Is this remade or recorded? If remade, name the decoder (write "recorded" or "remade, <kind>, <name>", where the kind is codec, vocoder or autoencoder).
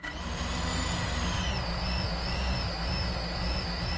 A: recorded